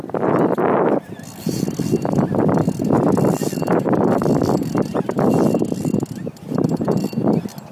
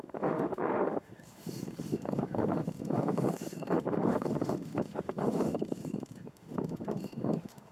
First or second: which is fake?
second